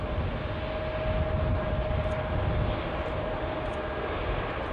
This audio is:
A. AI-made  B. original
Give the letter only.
B